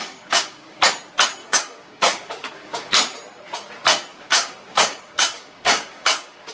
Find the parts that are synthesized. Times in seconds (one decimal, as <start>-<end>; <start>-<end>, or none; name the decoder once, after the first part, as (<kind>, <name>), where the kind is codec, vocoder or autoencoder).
0.0-0.8 (codec, DAC); 1.4-2.9; 4.1-6.5

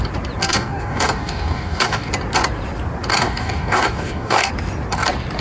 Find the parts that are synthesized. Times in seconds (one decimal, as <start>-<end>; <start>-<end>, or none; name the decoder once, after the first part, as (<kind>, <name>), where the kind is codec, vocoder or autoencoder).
0.4-2.1 (codec, DAC); 3.1-4.5

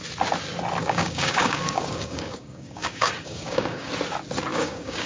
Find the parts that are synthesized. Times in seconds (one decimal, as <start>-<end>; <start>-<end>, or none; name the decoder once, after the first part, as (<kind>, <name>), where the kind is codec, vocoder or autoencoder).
0.8-3.9 (codec, DAC); 4.5-5.1

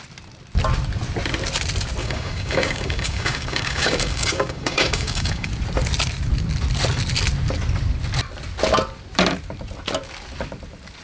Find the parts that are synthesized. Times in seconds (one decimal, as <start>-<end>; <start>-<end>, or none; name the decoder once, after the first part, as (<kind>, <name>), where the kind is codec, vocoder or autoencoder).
2.0-5.5 (codec, DAC)